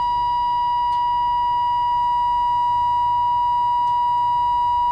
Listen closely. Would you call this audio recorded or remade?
recorded